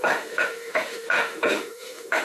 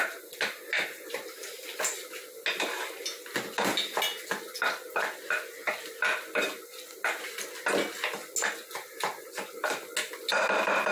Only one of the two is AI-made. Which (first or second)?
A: first